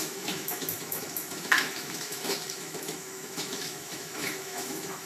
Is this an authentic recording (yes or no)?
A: no